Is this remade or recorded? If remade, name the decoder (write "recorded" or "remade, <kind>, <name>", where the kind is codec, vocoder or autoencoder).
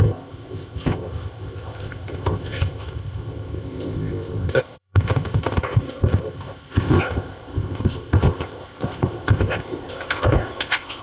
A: remade, codec, ZipCodec